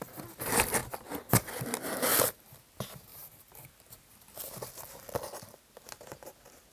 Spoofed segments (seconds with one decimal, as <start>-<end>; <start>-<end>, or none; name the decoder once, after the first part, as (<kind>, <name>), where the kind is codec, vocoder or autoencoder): 2.1-2.6 (vocoder, BigVGAN v2); 3.1-4.1